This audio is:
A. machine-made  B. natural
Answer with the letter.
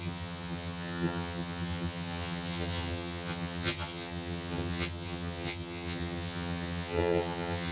A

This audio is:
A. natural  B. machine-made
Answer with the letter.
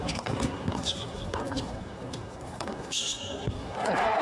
B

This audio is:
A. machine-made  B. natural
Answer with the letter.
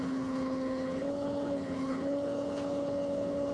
A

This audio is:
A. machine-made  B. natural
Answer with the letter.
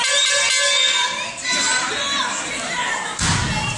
B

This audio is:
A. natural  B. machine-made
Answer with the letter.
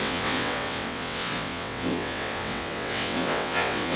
B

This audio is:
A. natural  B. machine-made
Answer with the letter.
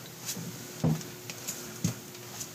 A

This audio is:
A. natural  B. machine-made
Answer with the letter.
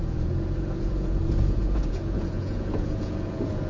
B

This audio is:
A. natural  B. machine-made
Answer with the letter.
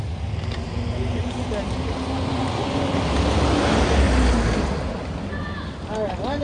A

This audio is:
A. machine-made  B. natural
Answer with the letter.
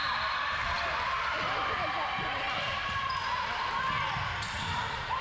A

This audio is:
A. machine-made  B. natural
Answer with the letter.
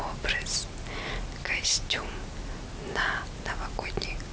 B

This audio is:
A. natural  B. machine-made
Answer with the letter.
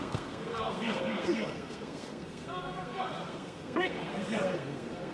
B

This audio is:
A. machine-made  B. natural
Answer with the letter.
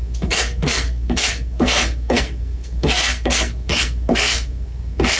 A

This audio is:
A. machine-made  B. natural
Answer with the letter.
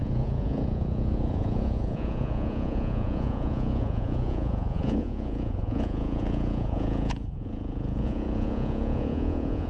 A